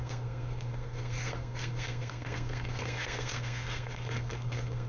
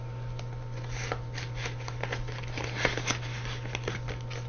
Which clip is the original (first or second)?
second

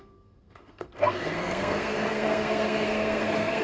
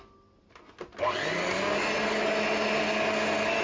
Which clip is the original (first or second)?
second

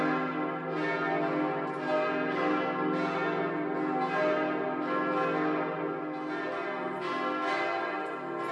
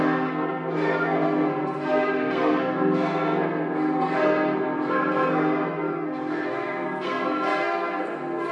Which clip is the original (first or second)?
first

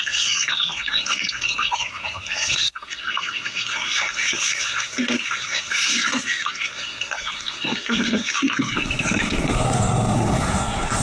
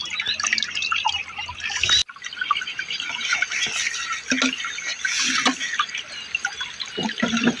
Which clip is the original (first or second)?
second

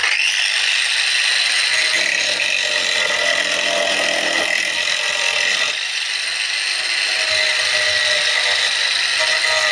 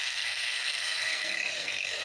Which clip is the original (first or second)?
first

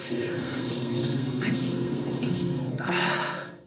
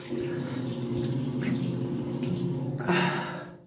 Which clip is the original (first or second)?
second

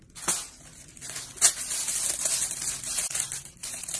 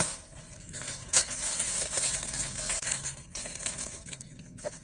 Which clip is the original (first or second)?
first